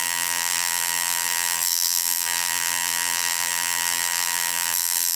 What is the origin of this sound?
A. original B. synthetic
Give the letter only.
B